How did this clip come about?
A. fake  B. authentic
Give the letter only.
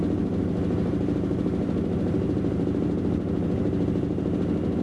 B